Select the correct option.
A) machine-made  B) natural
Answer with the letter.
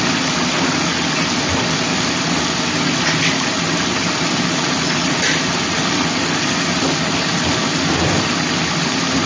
B